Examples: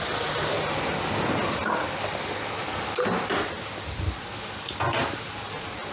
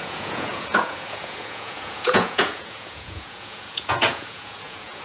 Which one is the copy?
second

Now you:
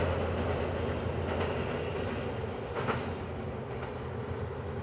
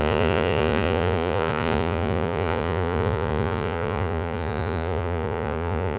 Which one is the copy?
second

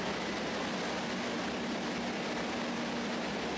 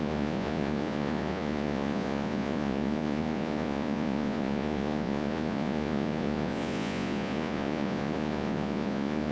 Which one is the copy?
second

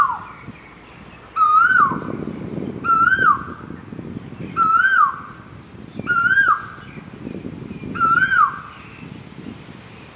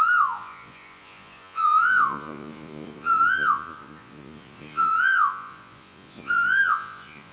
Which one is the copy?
second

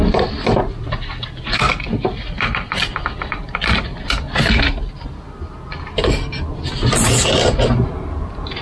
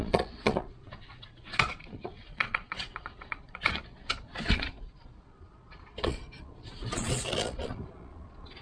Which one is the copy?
second